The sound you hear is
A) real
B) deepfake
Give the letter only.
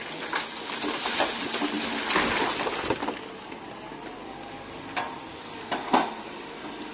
A